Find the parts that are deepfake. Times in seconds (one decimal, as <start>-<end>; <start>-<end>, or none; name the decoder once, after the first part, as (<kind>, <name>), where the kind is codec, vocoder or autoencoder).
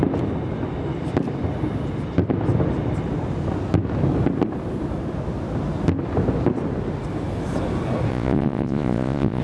8.1-9.4 (vocoder, Vocos)